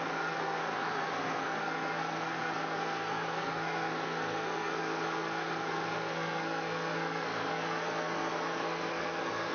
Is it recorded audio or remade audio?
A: remade